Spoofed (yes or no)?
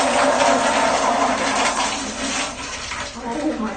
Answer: yes